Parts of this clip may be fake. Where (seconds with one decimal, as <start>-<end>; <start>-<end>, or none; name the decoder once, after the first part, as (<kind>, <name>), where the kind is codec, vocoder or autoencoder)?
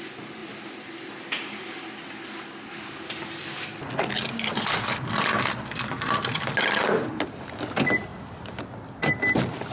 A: 8.1-8.6 (vocoder, BigVGAN v2)